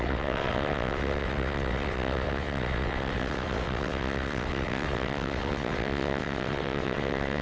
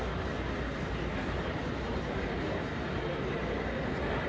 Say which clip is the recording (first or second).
second